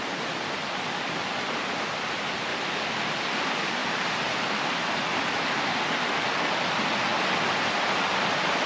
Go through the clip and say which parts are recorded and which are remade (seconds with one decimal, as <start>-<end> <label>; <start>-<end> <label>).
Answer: 0.0-2.5 recorded; 2.5-3.4 remade; 3.4-3.8 recorded; 3.8-5.7 remade; 5.7-8.7 recorded